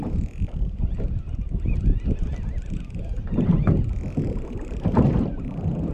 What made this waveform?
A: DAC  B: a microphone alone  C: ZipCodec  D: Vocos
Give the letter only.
B